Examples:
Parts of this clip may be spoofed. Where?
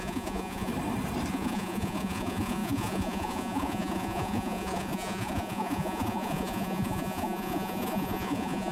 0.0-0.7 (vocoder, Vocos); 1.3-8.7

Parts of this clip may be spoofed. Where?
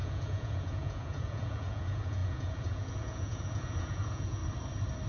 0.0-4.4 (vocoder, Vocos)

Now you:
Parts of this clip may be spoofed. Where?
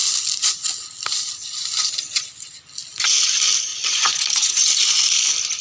3.7-4.5 (vocoder, Vocos)